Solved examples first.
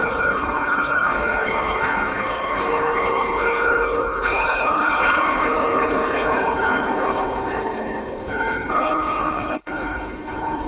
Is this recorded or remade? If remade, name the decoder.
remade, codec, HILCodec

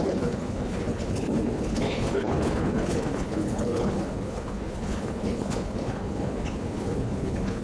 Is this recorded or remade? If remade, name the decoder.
remade, codec, HILCodec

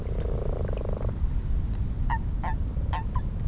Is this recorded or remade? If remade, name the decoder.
recorded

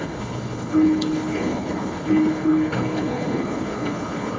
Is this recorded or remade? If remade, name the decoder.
remade, codec, HILCodec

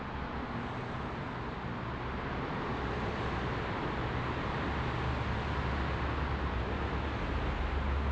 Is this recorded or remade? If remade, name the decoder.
recorded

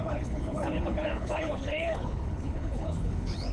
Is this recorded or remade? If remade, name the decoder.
remade, codec, HILCodec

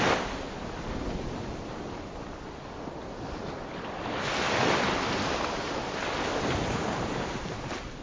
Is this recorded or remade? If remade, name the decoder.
recorded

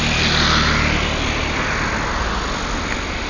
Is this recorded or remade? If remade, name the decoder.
recorded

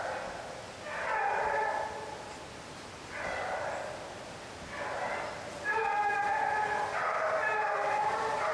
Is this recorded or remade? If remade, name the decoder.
recorded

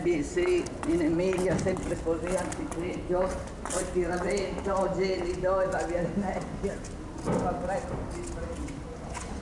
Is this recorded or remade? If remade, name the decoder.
recorded